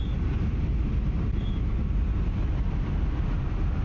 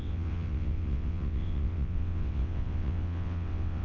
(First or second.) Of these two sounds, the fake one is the second